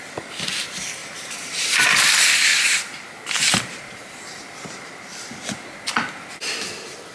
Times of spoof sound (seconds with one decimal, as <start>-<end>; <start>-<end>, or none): 1.0-1.7; 2.5-4.1

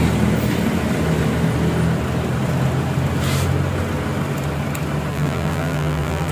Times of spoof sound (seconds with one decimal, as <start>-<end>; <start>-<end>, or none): 5.1-6.3

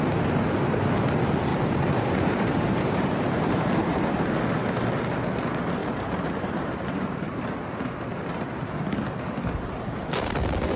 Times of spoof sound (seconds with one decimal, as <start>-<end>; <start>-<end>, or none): 1.5-4.3; 5.8-7.4

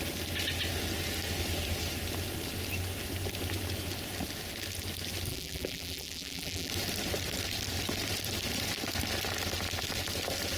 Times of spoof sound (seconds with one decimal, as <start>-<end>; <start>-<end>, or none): 5.3-6.7

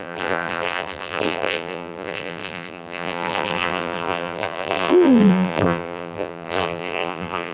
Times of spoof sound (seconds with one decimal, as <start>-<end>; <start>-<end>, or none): 0.0-7.5